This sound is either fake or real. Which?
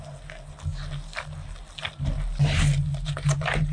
real